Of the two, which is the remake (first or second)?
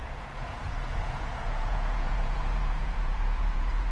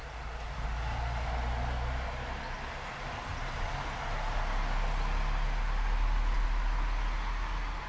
first